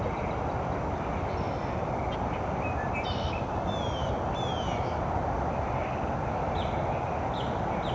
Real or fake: real